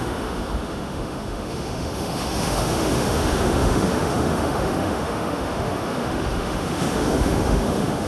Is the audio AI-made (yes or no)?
yes